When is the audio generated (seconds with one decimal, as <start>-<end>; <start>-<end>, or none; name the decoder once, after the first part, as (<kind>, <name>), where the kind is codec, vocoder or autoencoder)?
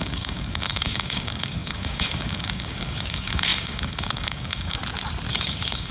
0.0-4.8 (codec, DAC); 5.3-5.9